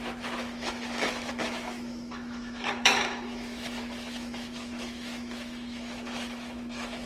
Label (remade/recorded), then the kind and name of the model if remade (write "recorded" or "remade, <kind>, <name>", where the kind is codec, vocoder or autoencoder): remade, autoencoder, DAC-VAE